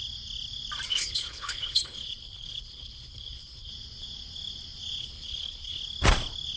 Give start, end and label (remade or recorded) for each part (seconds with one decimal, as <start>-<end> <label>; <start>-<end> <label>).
0.0-0.9 recorded; 0.9-3.7 remade; 3.7-5.0 recorded; 5.0-5.8 remade; 5.8-6.6 recorded